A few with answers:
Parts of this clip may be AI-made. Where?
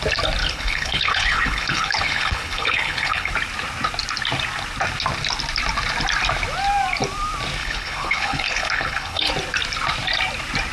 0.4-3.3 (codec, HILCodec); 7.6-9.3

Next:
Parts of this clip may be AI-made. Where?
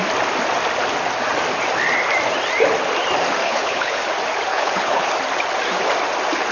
3.4-4.0 (codec, HILCodec); 4.5-5.1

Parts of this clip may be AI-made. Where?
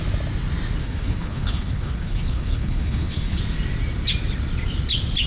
0.8-3.4 (codec, HILCodec)